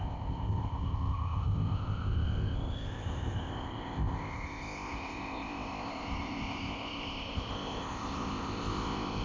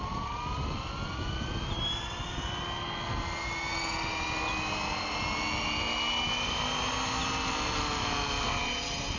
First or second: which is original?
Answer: second